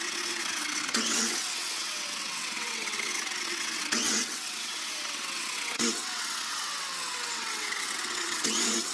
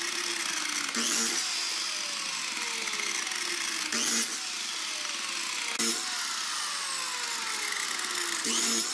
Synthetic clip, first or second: first